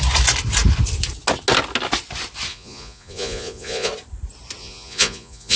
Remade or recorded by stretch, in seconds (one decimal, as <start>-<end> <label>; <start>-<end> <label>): 0.0-2.5 recorded; 2.5-3.9 remade; 3.9-4.6 recorded; 4.6-5.6 remade